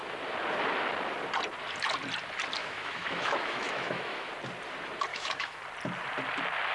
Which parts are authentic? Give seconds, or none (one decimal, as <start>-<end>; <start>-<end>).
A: 0.0-2.6; 4.3-5.1; 5.6-6.7